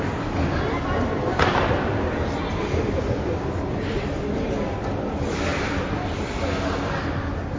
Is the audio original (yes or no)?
yes